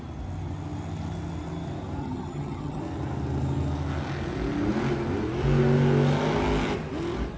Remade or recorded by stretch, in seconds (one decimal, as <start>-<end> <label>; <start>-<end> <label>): 0.0-2.0 recorded; 2.0-2.8 remade; 2.8-7.4 recorded